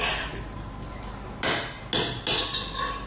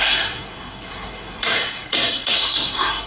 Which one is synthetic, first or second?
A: second